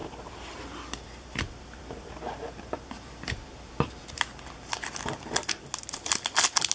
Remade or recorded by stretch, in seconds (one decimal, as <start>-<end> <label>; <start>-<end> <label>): 0.0-4.0 remade; 4.0-6.7 recorded